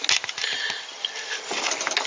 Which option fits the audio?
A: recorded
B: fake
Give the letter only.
A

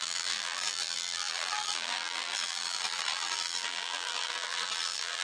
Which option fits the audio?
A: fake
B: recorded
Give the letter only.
A